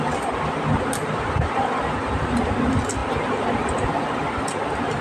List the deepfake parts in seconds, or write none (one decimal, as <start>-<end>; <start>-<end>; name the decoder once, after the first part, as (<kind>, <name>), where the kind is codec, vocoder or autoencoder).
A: none